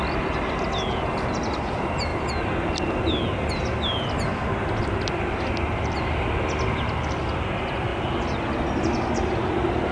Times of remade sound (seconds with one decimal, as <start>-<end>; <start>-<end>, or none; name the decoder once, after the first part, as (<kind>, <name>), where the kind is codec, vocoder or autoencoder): none